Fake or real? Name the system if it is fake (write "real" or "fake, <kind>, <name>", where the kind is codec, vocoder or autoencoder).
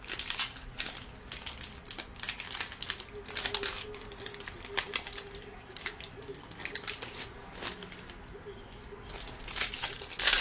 real